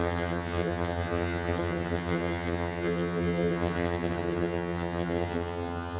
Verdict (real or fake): fake